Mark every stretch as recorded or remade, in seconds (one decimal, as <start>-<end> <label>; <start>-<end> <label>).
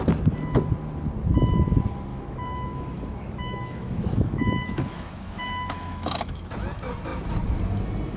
0.0-2.1 recorded; 2.1-6.5 remade; 6.5-8.2 recorded